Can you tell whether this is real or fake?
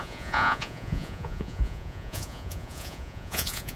fake